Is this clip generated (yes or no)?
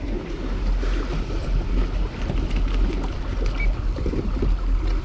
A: no